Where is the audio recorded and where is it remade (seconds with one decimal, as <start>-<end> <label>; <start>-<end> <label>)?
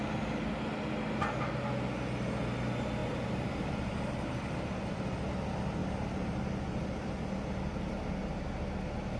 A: 0.0-3.0 recorded; 3.0-4.4 remade; 4.4-5.8 recorded; 5.8-7.8 remade; 7.8-9.2 recorded